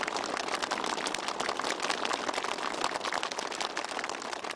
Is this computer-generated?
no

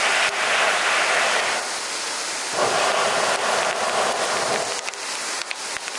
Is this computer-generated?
no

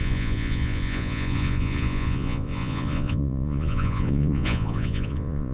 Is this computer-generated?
yes